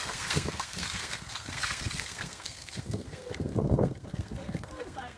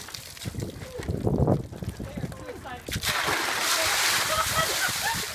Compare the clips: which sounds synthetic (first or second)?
first